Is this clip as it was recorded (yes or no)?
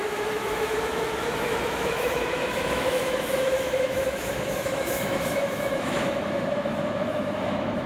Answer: no